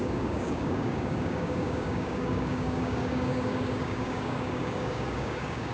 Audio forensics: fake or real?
fake